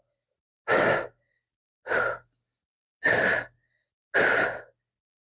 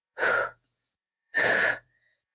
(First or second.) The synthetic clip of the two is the second